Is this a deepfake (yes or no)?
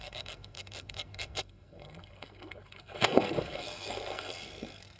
yes